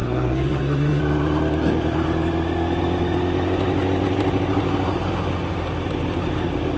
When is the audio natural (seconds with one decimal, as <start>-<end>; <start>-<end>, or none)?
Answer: 1.0-6.8